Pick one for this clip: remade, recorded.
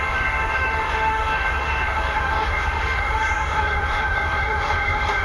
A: remade